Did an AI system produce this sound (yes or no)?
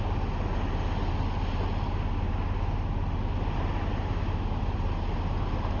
no